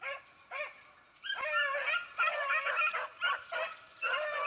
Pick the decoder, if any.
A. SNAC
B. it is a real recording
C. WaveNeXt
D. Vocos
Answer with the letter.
B